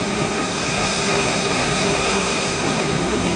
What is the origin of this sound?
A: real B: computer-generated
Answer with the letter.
B